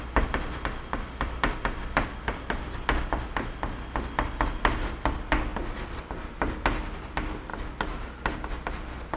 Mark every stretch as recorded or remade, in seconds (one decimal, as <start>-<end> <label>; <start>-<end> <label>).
0.0-9.2 recorded